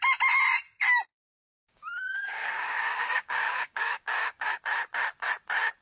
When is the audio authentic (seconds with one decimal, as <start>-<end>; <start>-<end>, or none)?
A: 0.0-1.1; 4.6-5.8